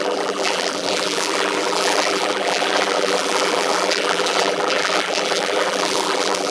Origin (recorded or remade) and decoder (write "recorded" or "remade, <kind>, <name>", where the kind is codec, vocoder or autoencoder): remade, vocoder, BigVGAN v2